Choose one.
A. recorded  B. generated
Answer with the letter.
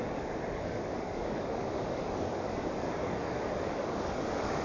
B